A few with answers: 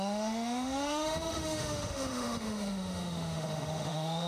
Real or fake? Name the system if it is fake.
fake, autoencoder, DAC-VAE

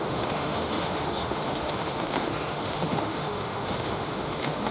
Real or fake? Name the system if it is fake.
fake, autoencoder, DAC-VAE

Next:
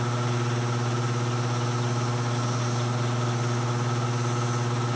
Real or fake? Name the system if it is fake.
real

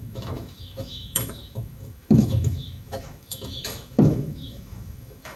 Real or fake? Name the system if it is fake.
fake, autoencoder, DAC-VAE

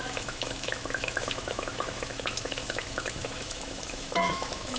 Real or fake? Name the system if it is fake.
fake, autoencoder, DAC-VAE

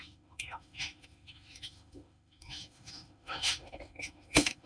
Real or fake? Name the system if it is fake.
fake, autoencoder, DAC-VAE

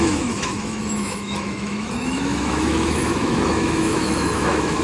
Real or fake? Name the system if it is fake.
fake, autoencoder, DAC-VAE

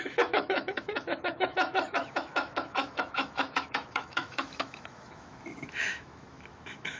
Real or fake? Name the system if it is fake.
fake, autoencoder, DAC-VAE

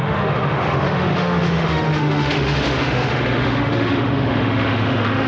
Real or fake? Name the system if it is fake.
fake, autoencoder, DAC-VAE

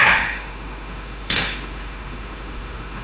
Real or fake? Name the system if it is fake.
fake, autoencoder, DAC-VAE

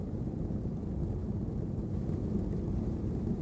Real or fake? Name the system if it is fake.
real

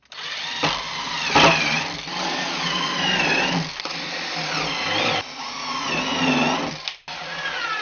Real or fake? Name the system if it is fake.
real